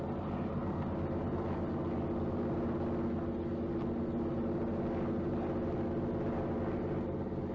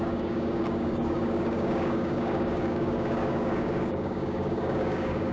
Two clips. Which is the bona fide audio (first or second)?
first